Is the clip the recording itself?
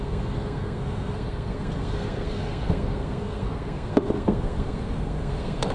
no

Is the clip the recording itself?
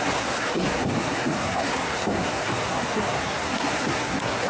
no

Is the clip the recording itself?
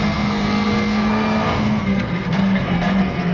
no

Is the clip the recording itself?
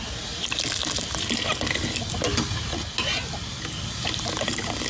yes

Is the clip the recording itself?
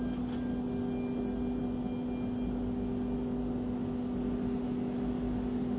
yes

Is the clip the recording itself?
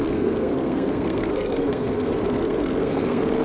no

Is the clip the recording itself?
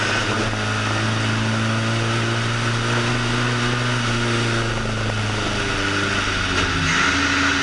yes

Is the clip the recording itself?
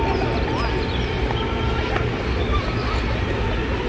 yes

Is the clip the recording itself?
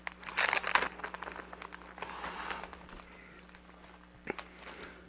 yes